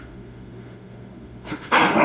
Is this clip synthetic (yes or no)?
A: yes